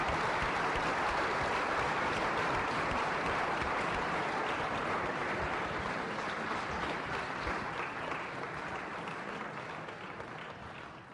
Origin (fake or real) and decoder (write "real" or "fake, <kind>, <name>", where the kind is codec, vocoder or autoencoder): real